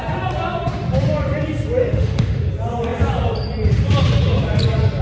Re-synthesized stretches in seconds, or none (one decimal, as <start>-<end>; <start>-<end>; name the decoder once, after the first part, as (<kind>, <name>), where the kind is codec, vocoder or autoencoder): 1.8-2.5 (autoencoder, DAC-VAE)

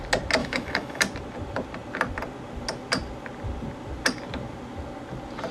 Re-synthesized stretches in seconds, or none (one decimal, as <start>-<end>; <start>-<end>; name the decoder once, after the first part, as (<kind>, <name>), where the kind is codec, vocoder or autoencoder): 0.4-1.0 (autoencoder, DAC-VAE)

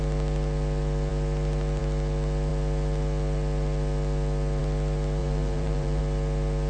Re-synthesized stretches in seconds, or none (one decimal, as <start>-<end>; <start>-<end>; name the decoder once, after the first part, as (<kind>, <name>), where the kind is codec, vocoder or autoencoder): 5.2-6.0 (vocoder, BigVGAN v2)

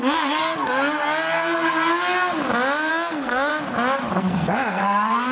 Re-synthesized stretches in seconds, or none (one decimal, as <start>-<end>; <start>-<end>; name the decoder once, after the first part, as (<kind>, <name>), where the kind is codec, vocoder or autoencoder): 0.0-0.4 (codec, SNAC); 2.9-3.5; 4.1-5.3

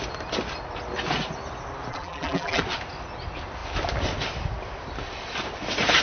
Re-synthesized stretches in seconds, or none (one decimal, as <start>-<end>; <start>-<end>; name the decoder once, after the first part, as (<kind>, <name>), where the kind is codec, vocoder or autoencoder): 1.9-2.6 (vocoder, BigVGAN v2)

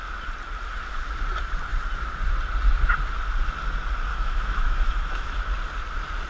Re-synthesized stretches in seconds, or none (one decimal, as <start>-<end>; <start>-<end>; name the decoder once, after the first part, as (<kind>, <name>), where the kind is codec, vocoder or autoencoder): 4.1-5.4 (autoencoder, DAC-VAE)

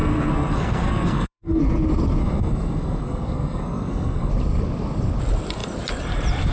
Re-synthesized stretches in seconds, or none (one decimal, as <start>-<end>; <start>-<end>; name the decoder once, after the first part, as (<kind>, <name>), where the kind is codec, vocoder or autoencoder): 0.0-1.6 (codec, SNAC); 2.2-4.3

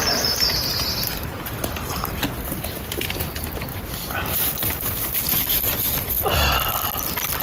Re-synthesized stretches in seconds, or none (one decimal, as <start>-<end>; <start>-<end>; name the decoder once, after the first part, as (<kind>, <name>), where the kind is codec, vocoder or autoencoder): none